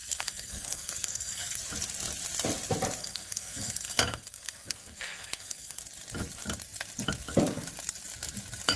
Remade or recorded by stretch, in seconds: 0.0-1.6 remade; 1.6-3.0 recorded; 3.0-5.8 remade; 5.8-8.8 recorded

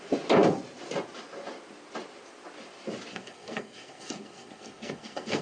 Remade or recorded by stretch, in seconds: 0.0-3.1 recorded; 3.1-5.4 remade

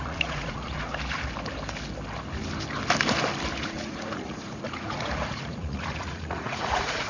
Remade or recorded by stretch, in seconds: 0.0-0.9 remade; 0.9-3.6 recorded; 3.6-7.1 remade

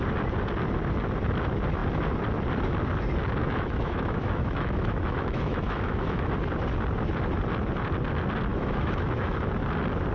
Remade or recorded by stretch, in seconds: 0.0-3.4 recorded; 3.4-6.3 remade; 6.3-8.5 recorded; 8.5-9.5 remade; 9.5-10.1 recorded

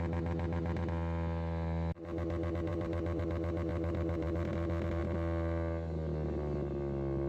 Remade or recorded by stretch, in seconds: 0.0-2.7 recorded; 2.7-3.2 remade; 3.2-3.7 recorded; 3.7-4.5 remade; 4.5-7.3 recorded

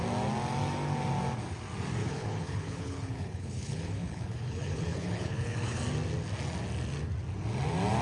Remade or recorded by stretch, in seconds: 0.0-2.0 recorded; 2.0-5.8 remade; 5.8-8.0 recorded

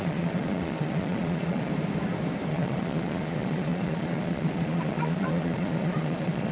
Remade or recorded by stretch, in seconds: 0.0-1.7 remade; 1.7-2.5 recorded; 2.5-6.5 remade

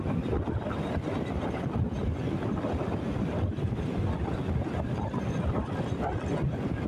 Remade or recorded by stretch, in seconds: 0.0-6.9 recorded